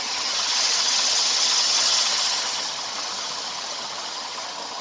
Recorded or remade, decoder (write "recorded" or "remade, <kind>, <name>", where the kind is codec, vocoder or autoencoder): remade, vocoder, HiFi-GAN